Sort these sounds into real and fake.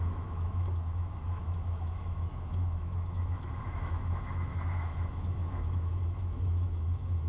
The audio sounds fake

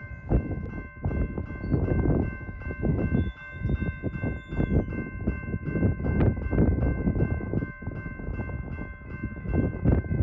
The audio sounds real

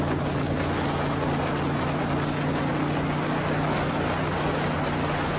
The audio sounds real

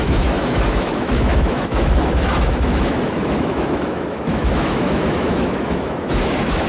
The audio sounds fake